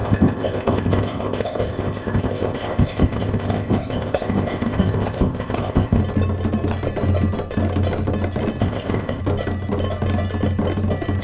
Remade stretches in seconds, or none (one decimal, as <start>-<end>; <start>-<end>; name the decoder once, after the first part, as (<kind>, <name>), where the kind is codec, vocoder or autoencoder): 0.0-6.0 (codec, ZipCodec); 8.6-9.2